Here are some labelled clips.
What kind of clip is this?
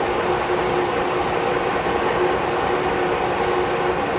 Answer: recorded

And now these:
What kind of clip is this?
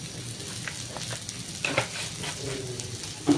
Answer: recorded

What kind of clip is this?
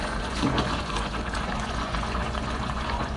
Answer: remade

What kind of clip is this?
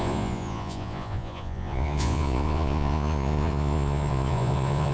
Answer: remade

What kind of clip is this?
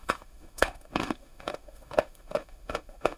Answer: remade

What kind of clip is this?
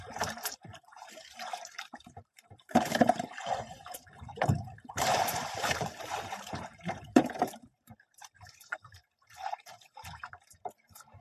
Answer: remade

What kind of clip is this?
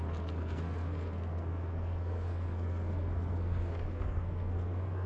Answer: remade